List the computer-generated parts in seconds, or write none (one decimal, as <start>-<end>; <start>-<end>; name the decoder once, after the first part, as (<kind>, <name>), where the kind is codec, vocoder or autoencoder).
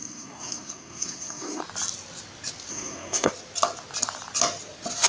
0.0-1.6 (codec, SNAC); 2.7-3.3